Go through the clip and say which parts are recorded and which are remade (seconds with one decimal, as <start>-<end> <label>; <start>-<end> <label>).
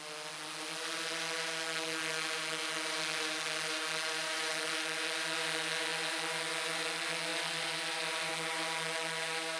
0.0-5.9 recorded; 5.9-6.5 remade; 6.5-7.3 recorded; 7.3-8.3 remade; 8.3-9.6 recorded